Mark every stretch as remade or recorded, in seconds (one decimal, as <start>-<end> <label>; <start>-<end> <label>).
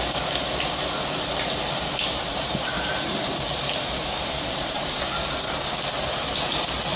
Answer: 0.0-2.3 recorded; 2.3-5.0 remade; 5.0-7.0 recorded